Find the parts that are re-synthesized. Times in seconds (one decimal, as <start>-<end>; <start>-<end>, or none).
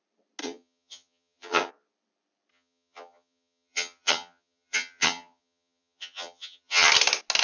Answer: 0.4-1.7; 2.5-6.9